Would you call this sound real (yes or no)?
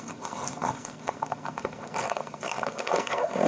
no